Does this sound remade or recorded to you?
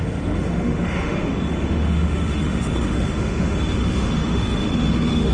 remade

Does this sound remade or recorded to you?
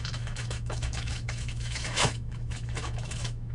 remade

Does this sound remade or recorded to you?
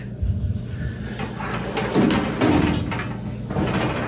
recorded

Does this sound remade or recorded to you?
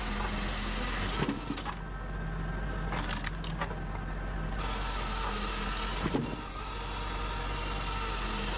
recorded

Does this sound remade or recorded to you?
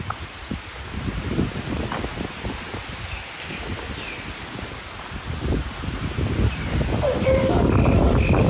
recorded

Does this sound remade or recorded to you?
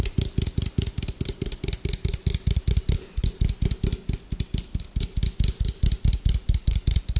recorded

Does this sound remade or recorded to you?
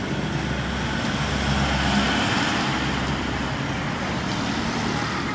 recorded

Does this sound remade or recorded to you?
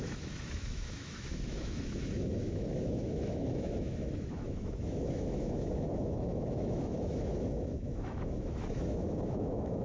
remade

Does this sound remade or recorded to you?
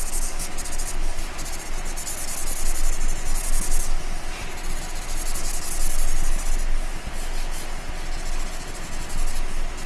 recorded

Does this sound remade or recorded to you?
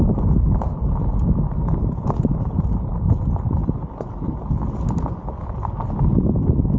recorded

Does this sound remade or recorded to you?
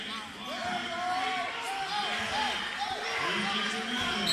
recorded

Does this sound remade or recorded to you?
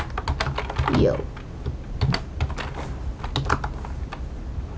recorded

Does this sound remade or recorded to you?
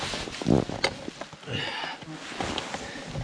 recorded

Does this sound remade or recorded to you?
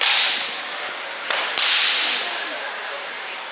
recorded